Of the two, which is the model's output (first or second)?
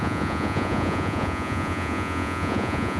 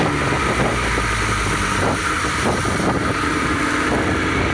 first